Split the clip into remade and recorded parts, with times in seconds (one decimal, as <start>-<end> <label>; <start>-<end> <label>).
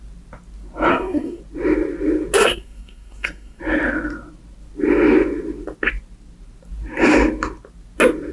0.0-0.9 recorded; 0.9-1.4 remade; 1.4-2.4 recorded; 2.4-3.6 remade; 3.6-8.3 recorded